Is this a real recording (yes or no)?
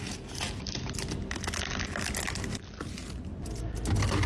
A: yes